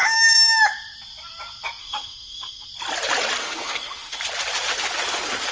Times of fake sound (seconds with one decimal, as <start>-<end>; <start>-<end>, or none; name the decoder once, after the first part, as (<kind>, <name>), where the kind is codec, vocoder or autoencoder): 0.0-0.6 (autoencoder, DAC-VAE); 1.8-2.7; 3.4-4.2